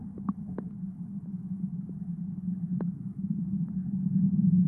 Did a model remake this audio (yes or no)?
no